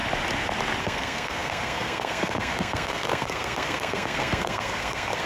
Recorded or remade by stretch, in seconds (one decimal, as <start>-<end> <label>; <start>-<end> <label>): 0.0-0.8 recorded; 0.8-5.3 remade